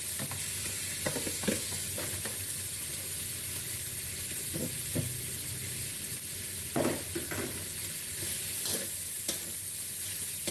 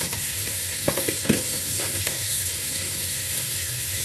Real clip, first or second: first